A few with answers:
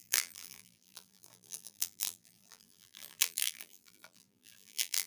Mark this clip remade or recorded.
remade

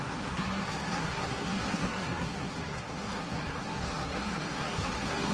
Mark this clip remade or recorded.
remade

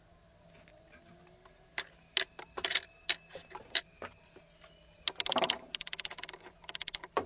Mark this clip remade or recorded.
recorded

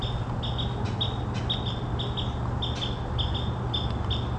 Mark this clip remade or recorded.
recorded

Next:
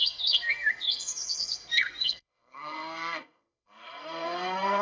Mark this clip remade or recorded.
remade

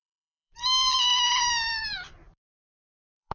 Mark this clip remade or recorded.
remade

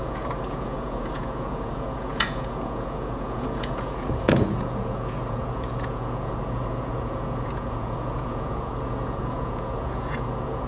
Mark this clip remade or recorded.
remade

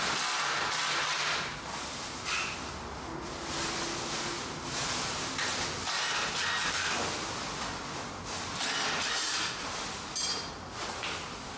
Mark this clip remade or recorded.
recorded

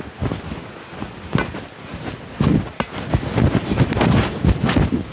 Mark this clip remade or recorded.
recorded